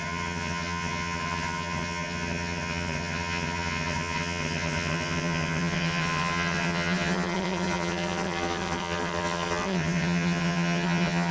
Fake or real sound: fake